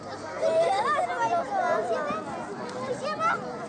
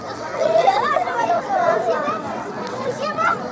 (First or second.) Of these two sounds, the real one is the first